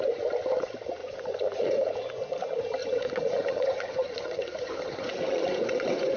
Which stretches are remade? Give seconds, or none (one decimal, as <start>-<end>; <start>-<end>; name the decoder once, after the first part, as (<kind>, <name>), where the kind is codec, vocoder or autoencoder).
1.0-1.9 (vocoder, Vocos); 2.8-6.2